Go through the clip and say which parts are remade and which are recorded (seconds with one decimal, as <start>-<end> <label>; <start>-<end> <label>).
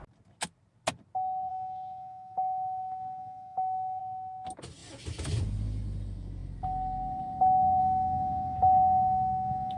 0.0-1.5 recorded; 1.5-4.0 remade; 4.0-7.8 recorded; 7.8-9.8 remade